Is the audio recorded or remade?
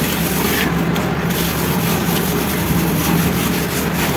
recorded